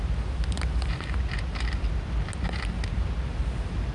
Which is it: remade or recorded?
recorded